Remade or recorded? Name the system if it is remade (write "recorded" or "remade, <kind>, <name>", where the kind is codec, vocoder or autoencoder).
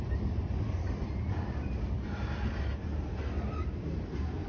recorded